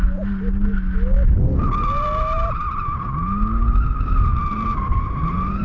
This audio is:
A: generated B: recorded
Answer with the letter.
B